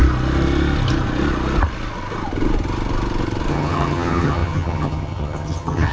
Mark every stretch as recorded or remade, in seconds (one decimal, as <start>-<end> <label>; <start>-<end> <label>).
0.0-3.5 recorded; 3.5-5.9 remade